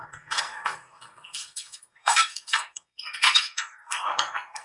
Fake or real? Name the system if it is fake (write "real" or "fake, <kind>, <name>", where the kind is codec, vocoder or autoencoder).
fake, codec, SNAC